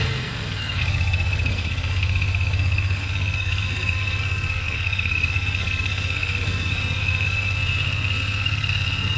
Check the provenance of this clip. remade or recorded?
remade